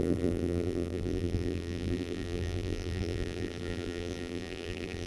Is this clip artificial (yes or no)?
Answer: yes